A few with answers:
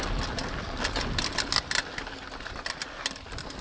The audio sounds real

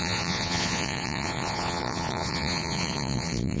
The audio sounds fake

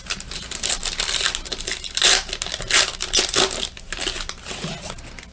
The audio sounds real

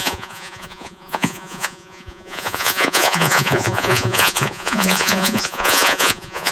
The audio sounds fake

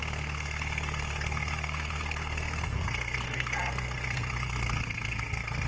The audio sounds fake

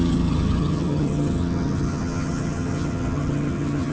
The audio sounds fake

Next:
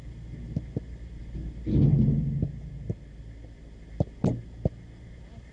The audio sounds real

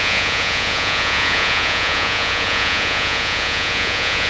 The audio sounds fake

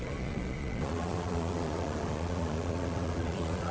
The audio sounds fake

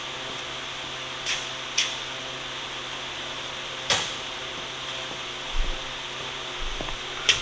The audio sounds real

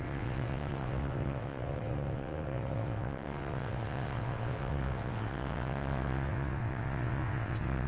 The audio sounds fake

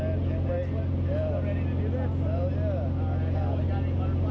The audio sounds real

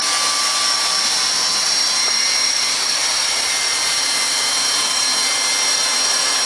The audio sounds real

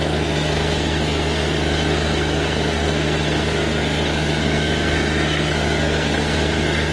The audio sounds fake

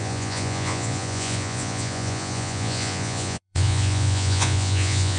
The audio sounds fake